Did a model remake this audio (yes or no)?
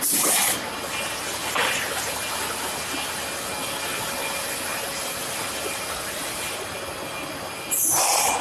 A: no